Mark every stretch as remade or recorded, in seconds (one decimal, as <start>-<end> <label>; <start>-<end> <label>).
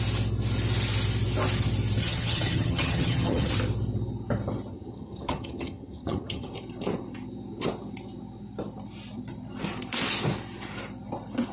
0.0-2.0 recorded; 2.0-3.5 remade; 3.5-4.7 recorded; 4.7-6.5 remade; 6.5-11.5 recorded